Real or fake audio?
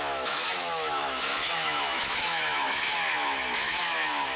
fake